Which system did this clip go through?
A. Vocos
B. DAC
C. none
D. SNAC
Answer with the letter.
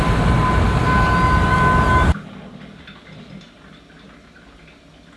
C